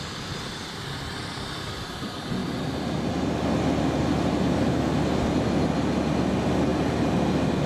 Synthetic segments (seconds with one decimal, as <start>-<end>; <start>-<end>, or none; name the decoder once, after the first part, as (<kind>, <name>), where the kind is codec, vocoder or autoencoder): none